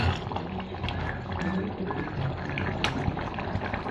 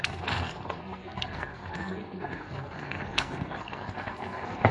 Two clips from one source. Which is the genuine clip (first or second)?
first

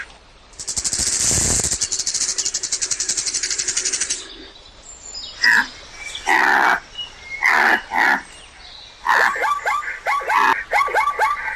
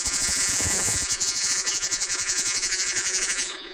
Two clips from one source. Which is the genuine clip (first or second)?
first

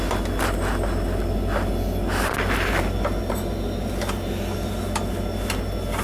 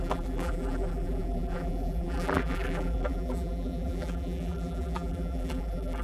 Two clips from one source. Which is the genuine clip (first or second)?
first